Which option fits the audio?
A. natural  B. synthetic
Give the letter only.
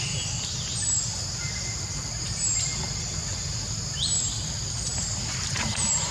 A